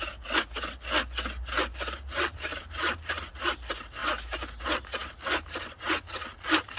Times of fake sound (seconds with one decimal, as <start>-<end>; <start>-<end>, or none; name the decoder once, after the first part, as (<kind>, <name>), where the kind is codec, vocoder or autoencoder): 2.5-3.5 (vocoder, BigVGAN v2); 4.0-4.6